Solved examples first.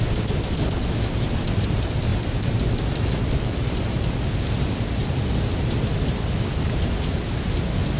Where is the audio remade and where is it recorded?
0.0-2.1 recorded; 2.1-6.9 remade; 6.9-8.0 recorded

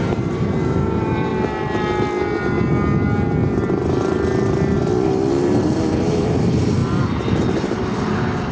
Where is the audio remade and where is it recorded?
0.0-1.3 remade; 1.3-5.3 recorded; 5.3-6.8 remade; 6.8-7.4 recorded; 7.4-8.5 remade

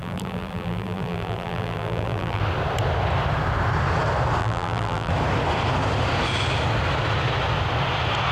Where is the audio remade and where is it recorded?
0.0-2.4 remade; 2.4-4.4 recorded; 4.4-5.1 remade; 5.1-8.3 recorded